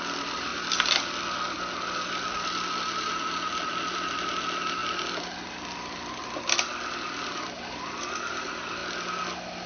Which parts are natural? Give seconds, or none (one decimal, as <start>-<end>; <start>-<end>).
0.0-9.7